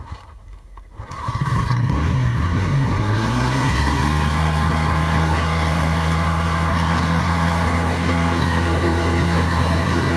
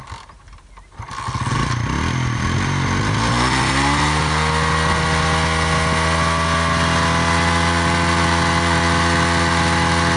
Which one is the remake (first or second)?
first